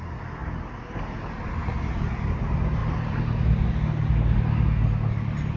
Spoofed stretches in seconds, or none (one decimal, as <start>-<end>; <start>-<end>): none